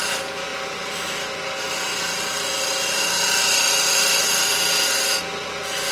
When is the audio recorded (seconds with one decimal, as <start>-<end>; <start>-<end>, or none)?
0.0-5.9